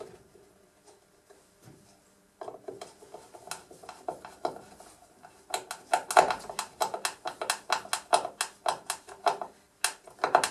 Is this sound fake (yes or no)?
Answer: no